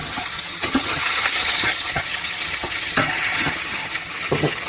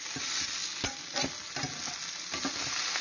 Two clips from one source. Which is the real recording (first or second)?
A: second